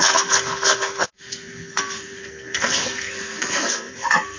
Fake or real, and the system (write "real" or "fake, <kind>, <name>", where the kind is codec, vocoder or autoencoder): fake, codec, SNAC